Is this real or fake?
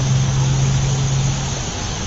real